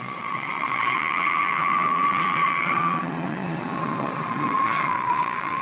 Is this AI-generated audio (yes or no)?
yes